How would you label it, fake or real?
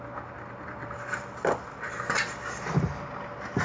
real